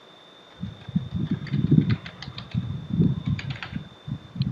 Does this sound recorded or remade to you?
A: recorded